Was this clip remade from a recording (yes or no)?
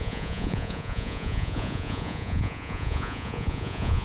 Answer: yes